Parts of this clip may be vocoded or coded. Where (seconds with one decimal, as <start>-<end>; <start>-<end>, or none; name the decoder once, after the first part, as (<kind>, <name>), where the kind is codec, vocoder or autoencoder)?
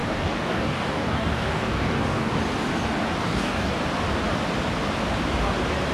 0.0-2.3 (codec, DAC); 3.2-3.7